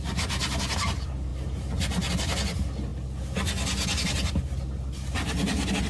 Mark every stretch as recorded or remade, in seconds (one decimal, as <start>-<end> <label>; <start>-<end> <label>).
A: 0.0-5.9 recorded